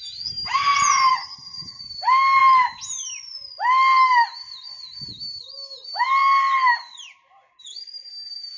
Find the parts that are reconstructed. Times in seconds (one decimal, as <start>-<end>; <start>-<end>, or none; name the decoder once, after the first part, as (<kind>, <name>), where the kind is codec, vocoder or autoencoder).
1.1-1.8 (vocoder, HiFi-GAN)

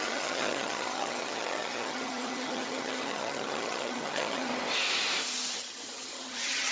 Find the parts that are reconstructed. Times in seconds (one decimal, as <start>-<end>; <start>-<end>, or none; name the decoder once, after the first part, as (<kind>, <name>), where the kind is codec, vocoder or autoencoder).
0.0-4.5 (vocoder, HiFi-GAN); 5.5-6.7

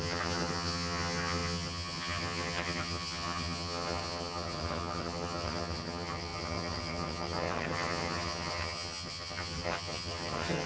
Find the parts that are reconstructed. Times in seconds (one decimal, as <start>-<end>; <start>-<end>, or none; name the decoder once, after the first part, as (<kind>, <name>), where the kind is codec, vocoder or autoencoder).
0.0-10.7 (vocoder, HiFi-GAN)